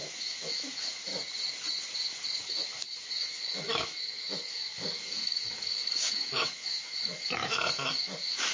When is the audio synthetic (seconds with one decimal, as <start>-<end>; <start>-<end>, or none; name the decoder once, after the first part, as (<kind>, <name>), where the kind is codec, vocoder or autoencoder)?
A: 0.0-1.1 (autoencoder, DAC-VAE); 2.4-8.5